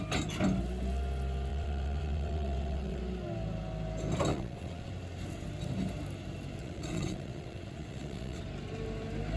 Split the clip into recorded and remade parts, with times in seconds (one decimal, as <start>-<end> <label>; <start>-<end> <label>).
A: 0.0-1.5 recorded; 1.5-3.0 remade; 3.0-4.3 recorded; 4.3-4.9 remade; 4.9-6.6 recorded; 6.6-8.4 remade; 8.4-9.4 recorded